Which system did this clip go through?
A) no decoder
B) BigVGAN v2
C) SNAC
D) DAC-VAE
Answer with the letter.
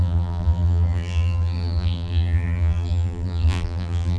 B